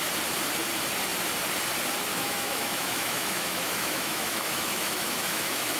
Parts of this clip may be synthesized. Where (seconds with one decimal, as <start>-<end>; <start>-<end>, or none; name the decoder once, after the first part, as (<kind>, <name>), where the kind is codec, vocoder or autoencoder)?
2.1-5.8 (autoencoder, DAC-VAE)